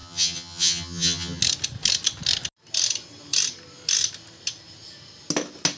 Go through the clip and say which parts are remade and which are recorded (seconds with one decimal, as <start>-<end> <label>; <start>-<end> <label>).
0.0-1.4 remade; 1.4-5.8 recorded